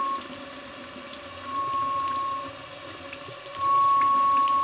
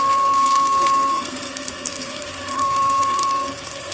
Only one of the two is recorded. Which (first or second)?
first